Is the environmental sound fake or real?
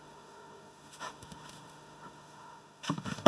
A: fake